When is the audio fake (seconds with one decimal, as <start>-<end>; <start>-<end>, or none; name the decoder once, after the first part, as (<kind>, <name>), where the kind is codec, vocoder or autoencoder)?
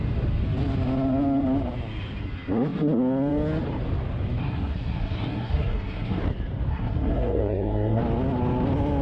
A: 4.4-6.2 (codec, SNAC); 6.7-8.0